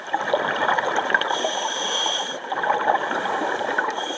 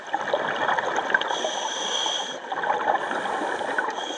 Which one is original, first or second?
second